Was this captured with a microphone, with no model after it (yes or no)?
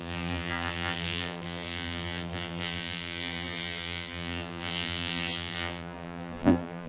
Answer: no